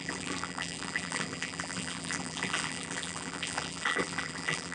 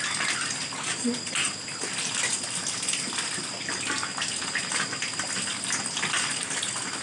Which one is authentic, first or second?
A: second